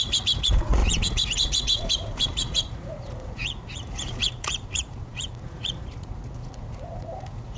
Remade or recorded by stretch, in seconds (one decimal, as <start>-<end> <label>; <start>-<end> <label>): 0.0-7.6 remade